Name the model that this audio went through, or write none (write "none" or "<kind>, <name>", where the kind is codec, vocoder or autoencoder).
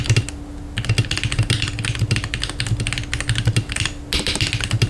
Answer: none